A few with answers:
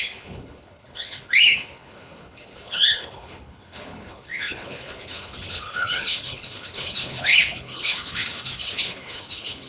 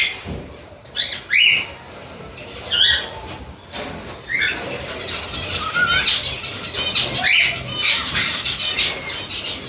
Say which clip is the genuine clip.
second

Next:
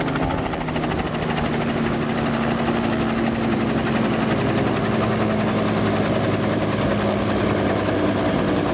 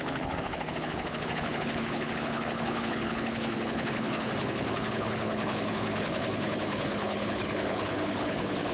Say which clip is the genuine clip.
first